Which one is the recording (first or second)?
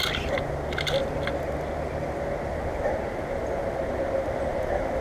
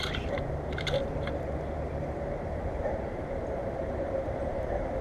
first